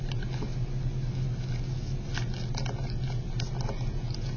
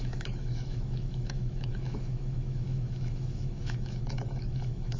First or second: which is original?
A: first